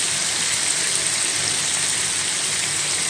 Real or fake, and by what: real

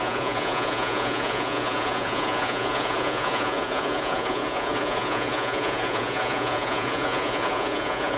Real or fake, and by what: fake, vocoder, Vocos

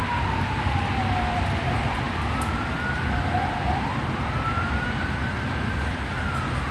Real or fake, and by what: real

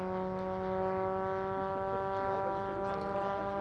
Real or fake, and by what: real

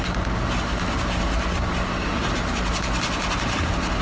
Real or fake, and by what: real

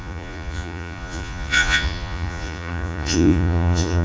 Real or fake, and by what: fake, vocoder, Vocos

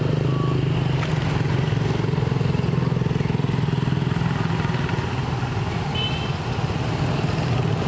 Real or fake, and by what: real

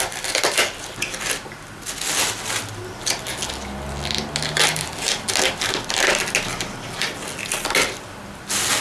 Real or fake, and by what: real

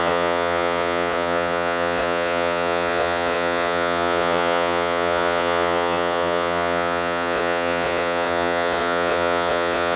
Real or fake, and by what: fake, vocoder, Vocos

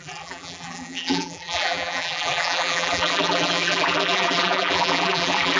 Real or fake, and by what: fake, vocoder, BigVGAN v2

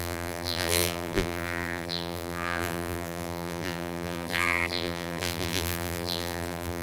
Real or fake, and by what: fake, vocoder, BigVGAN v2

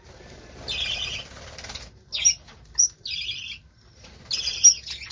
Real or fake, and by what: real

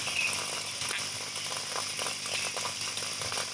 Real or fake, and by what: real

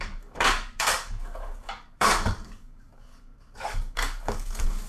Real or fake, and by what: fake, codec, DAC